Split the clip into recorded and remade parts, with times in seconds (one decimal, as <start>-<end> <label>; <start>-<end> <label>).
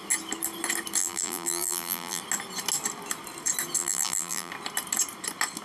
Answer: 0.0-1.0 recorded; 1.0-2.2 remade; 2.2-3.8 recorded; 3.8-4.5 remade; 4.5-5.6 recorded